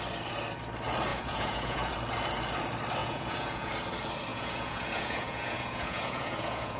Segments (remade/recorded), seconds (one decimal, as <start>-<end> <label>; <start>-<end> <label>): 0.0-1.1 recorded; 1.1-1.9 remade; 1.9-3.0 recorded; 3.0-3.7 remade; 3.7-4.3 recorded; 4.3-6.8 remade